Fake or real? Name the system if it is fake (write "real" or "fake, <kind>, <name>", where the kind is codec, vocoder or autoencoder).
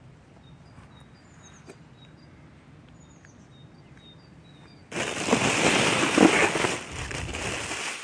real